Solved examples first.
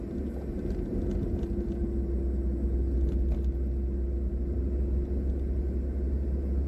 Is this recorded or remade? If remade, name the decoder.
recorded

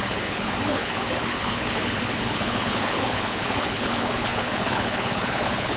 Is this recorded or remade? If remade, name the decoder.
remade, codec, HILCodec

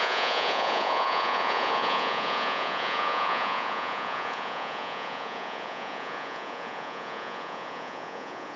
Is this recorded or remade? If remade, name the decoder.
remade, vocoder, Vocos